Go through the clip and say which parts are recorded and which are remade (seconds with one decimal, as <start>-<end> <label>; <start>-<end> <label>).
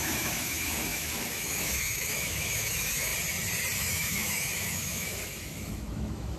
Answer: 0.0-3.1 remade; 3.1-3.8 recorded; 3.8-6.4 remade